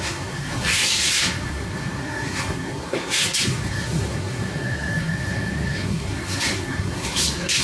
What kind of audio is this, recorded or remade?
remade